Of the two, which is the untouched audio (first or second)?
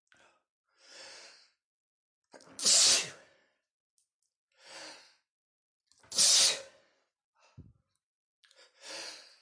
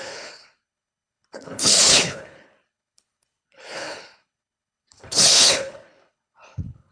first